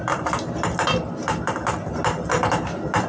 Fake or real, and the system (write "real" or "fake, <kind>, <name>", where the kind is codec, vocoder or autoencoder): real